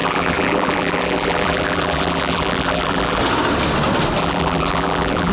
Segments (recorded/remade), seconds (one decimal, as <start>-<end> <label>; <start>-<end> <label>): 0.0-3.2 remade; 3.2-4.2 recorded; 4.2-5.3 remade